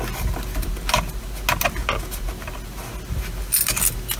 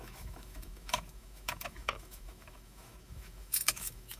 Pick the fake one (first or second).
second